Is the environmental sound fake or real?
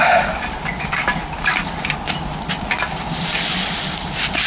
fake